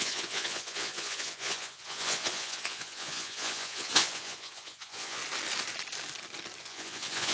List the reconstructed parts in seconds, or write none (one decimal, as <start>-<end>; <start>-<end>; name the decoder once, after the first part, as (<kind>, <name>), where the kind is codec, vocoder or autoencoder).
0.0-5.2 (vocoder, Vocos); 6.6-7.3